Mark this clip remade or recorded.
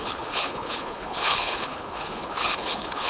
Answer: remade